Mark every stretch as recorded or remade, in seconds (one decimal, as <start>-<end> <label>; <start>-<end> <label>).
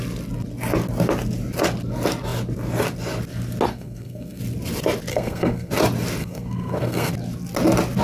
0.0-3.7 recorded; 3.7-4.4 remade; 4.4-5.1 recorded; 5.1-5.7 remade; 5.7-6.2 recorded; 6.2-7.1 remade; 7.1-8.0 recorded